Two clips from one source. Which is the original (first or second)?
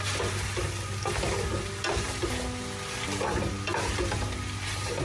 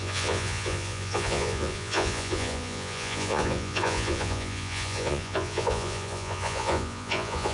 first